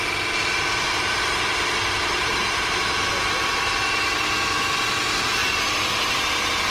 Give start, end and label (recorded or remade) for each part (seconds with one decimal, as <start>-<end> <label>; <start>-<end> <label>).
0.0-6.7 recorded